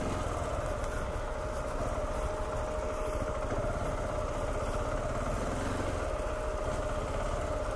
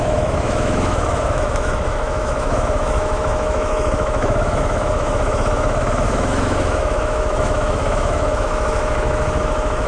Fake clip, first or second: second